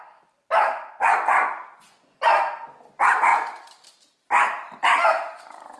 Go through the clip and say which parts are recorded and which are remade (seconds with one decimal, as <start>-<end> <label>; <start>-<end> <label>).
0.0-1.2 recorded; 1.2-2.2 remade; 2.2-5.8 recorded